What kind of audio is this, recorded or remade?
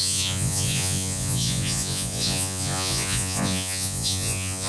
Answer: remade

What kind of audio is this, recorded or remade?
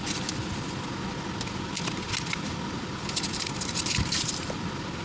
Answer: recorded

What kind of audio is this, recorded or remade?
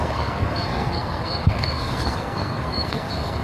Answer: remade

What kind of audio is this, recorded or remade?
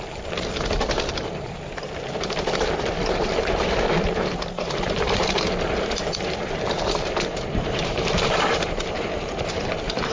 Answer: remade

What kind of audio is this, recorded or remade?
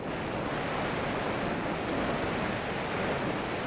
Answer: recorded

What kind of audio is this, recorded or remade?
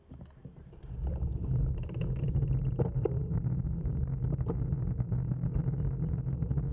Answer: recorded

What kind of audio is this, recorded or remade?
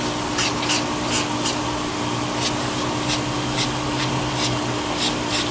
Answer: recorded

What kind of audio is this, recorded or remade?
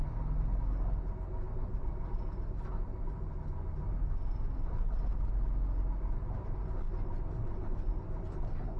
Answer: recorded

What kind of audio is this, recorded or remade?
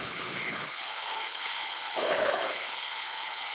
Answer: remade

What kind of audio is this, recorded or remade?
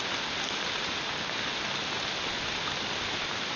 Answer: recorded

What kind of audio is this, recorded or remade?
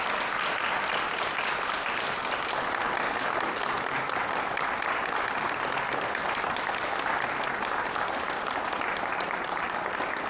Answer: recorded